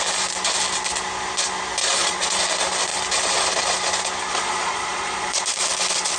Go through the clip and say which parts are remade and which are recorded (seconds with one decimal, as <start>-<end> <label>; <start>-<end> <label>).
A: 0.0-1.8 recorded; 1.8-2.4 remade; 2.4-4.3 recorded; 4.3-5.4 remade; 5.4-6.2 recorded